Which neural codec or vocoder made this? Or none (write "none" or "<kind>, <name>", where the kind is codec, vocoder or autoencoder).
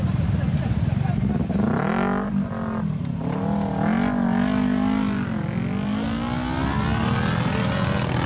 none